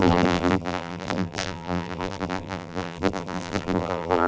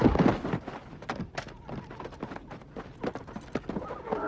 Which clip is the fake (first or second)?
first